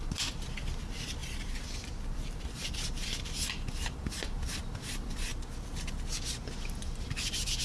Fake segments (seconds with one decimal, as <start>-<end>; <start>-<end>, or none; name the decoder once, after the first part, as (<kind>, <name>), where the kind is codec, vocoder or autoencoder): 0.0-1.2 (vocoder, BigVGAN v2); 2.1-5.3; 7.1-7.6